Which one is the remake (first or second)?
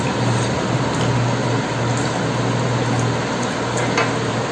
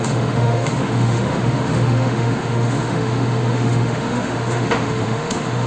second